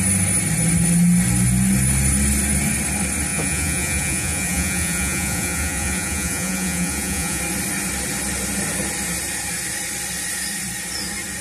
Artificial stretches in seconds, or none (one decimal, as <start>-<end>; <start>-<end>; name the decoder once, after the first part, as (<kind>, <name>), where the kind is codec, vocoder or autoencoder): 3.3-7.4 (vocoder, Vocos)